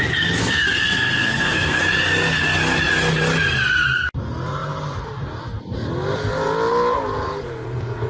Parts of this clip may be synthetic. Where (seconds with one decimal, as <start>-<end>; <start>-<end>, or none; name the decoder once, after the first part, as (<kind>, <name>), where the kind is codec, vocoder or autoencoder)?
0.4-1.8 (codec, SNAC)